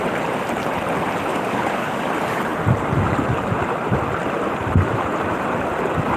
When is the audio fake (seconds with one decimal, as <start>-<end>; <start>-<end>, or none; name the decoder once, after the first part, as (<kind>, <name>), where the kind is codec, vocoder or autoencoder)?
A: 1.3-2.1 (codec, DAC)